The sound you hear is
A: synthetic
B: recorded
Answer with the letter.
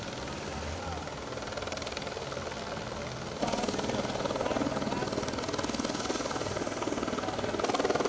B